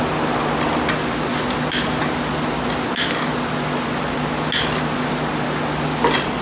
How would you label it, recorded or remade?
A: recorded